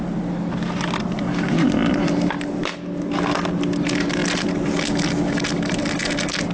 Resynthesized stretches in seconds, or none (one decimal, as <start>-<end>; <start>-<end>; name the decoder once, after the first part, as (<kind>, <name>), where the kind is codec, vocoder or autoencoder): none

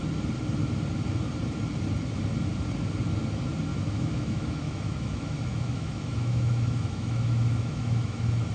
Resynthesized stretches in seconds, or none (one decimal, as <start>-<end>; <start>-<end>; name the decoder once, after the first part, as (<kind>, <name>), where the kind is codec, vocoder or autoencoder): 3.7-8.5 (autoencoder, DAC-VAE)